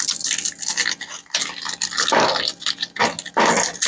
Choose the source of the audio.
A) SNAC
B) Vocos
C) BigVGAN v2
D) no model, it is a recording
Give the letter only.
D